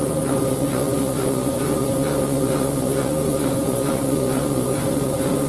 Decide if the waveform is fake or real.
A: fake